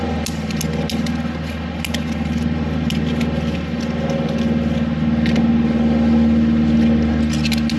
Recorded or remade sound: recorded